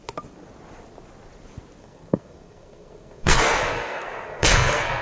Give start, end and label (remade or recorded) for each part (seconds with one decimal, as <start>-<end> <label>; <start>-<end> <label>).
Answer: 0.0-1.8 recorded; 1.8-5.0 remade